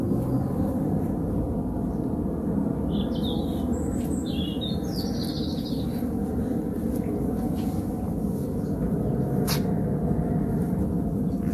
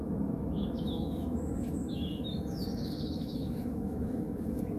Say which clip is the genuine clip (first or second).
first